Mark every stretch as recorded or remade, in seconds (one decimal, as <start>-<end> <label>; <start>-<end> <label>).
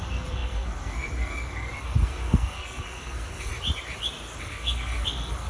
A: 0.0-3.5 remade; 3.5-4.4 recorded; 4.4-5.5 remade